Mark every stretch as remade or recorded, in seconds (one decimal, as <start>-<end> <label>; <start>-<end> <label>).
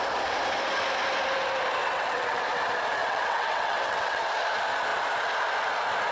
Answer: 0.0-1.8 recorded; 1.8-2.4 remade; 2.4-3.0 recorded; 3.0-4.2 remade; 4.2-6.1 recorded